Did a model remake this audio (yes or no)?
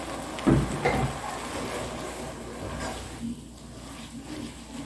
no